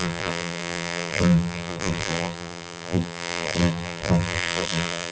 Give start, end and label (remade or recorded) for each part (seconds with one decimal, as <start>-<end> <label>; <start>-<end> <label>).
0.0-5.1 remade